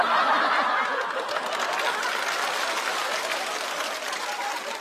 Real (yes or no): yes